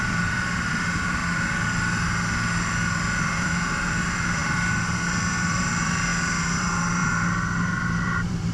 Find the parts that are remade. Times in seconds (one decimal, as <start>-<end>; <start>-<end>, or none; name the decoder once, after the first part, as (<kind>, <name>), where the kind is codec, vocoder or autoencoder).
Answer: 0.0-1.2 (vocoder, BigVGAN v2); 3.2-6.1; 6.6-7.0; 7.6-8.5